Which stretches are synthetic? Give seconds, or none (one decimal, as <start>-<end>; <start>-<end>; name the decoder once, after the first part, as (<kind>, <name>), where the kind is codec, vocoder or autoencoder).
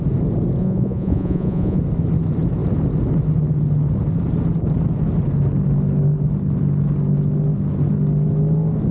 0.6-1.8 (vocoder, Vocos)